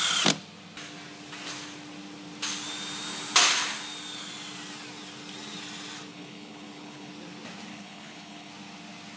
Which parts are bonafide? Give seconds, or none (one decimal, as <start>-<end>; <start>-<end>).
0.0-6.1; 7.1-7.7; 8.5-9.2